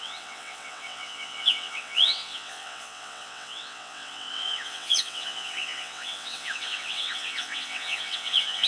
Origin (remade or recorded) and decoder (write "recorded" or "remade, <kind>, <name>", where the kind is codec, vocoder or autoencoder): remade, vocoder, WaveNeXt